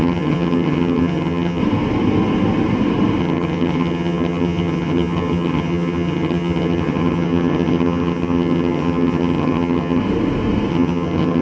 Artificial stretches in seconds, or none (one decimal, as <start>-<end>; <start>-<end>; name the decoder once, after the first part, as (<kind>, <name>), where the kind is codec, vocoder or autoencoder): 0.0-1.6 (vocoder, HiFi-GAN); 3.2-10.0; 10.7-11.4